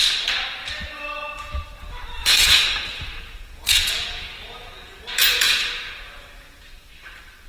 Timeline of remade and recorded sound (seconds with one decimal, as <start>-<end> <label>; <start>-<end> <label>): 0.0-2.2 recorded; 2.2-6.6 remade; 6.6-7.5 recorded